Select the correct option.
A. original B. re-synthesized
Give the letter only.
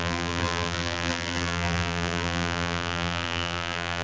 B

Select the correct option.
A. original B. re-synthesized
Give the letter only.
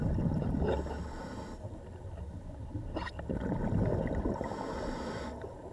A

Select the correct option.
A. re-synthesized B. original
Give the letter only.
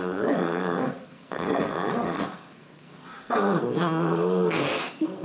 A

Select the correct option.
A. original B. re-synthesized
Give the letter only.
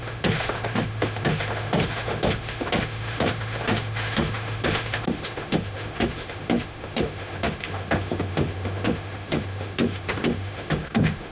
B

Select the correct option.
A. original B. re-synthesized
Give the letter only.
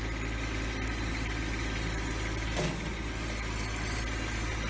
A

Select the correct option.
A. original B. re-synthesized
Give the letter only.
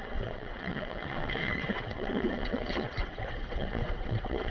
B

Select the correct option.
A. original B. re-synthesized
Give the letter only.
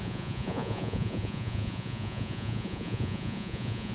B